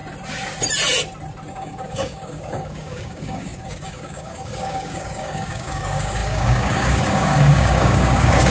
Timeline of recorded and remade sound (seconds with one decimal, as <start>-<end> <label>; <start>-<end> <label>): 0.0-1.5 recorded; 1.5-8.5 remade